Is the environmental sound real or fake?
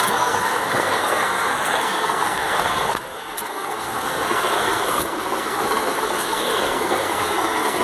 fake